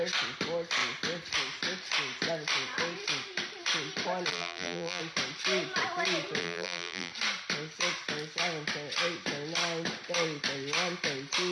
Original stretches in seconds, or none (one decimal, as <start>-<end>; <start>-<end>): 0.0-4.3; 5.0-6.4; 7.1-11.5